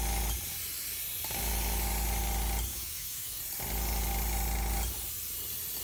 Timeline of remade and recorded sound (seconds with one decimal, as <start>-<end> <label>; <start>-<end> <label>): 0.0-2.7 recorded; 2.7-3.4 remade; 3.4-5.8 recorded